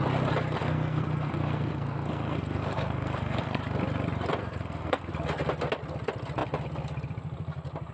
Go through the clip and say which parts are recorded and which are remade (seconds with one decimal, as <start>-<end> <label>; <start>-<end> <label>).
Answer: 0.0-0.6 recorded; 0.6-3.6 remade; 3.6-4.4 recorded; 4.4-5.1 remade; 5.1-7.9 recorded